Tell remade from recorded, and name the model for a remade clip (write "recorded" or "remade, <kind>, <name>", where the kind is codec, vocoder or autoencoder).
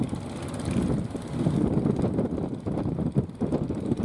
recorded